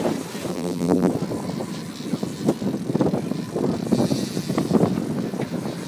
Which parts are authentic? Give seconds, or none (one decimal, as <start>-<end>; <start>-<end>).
0.0-0.5; 1.1-5.9